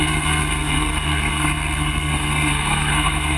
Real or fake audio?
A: fake